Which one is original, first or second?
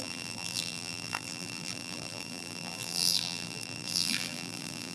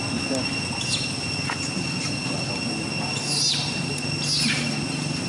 second